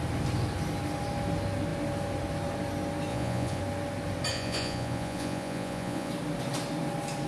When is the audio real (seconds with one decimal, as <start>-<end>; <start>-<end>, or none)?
0.0-3.1; 3.6-4.3; 6.1-7.3